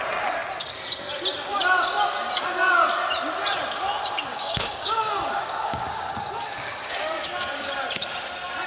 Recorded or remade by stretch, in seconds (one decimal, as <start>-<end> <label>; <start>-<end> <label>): 0.0-4.3 recorded; 4.3-7.7 remade; 7.7-8.7 recorded